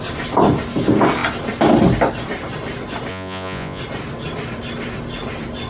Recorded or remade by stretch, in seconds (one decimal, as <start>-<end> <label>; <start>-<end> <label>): 0.0-3.1 recorded; 3.1-3.8 remade; 3.8-5.7 recorded

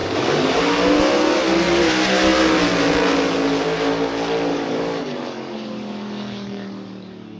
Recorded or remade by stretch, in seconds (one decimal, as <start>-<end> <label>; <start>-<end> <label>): 0.0-0.6 remade; 0.6-4.5 recorded; 4.5-7.4 remade

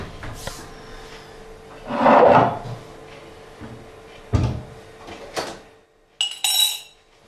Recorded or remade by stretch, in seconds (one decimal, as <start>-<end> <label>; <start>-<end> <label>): 0.0-7.3 recorded

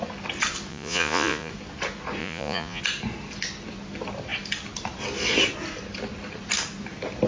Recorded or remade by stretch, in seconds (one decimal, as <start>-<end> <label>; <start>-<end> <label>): 0.0-0.7 recorded; 0.7-1.5 remade; 1.5-2.2 recorded; 2.2-2.8 remade; 2.8-7.3 recorded

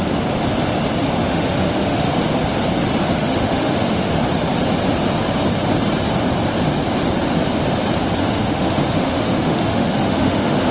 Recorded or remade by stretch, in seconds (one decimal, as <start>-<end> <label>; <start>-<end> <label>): 0.0-1.2 recorded; 1.2-2.2 remade; 2.2-3.2 recorded; 3.2-4.2 remade; 4.2-8.2 recorded; 8.2-10.7 remade

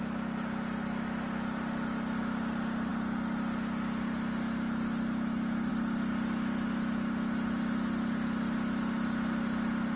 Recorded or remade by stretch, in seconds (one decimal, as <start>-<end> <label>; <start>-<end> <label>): 0.0-10.0 recorded

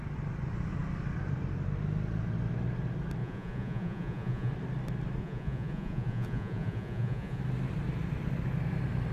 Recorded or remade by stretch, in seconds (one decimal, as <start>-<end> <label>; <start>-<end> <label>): 0.0-3.2 recorded; 3.2-4.5 remade; 4.5-5.2 recorded; 5.2-7.4 remade; 7.4-9.1 recorded